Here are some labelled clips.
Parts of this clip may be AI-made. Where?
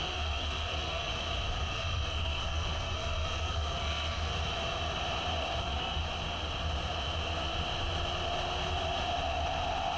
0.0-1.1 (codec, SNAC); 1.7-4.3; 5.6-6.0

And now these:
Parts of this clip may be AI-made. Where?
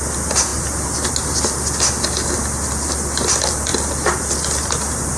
none